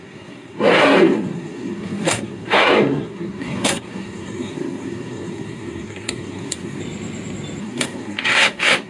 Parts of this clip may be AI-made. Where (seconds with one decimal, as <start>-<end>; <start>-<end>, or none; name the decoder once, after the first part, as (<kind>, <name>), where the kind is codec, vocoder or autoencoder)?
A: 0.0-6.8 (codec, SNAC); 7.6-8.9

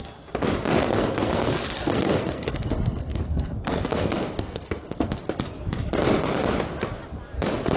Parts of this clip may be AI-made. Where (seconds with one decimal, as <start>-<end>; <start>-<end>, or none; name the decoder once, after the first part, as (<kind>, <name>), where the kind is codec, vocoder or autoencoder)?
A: 0.9-5.2 (codec, SNAC)

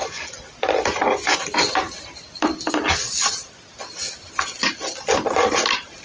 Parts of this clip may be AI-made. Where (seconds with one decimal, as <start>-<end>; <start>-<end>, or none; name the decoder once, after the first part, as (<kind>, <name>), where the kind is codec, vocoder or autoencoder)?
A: none

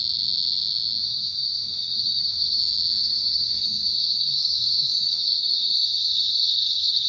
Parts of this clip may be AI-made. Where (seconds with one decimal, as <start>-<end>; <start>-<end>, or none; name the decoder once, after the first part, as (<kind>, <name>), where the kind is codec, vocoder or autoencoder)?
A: 1.0-2.6 (codec, SNAC); 3.0-7.1

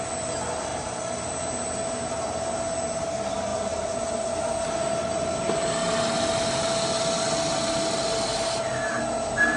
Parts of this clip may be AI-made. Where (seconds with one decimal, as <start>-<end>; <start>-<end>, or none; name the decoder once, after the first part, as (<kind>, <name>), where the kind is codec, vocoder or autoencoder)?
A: none